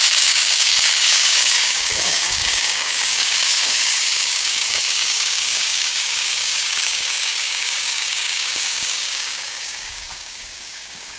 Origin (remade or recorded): remade